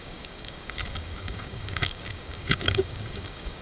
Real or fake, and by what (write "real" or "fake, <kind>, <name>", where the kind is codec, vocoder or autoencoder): fake, codec, DAC